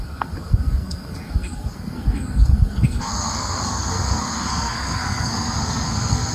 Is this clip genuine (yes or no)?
no